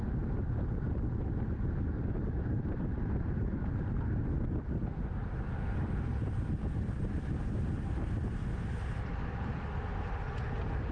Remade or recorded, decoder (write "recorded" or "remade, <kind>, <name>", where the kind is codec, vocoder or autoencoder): recorded